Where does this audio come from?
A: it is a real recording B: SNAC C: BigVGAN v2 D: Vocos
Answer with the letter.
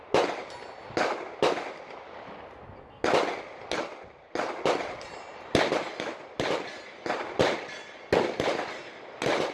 A